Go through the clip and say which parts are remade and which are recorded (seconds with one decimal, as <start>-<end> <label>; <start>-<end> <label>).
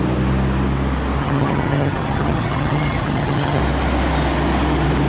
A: 0.0-1.2 recorded; 1.2-3.6 remade; 3.6-5.1 recorded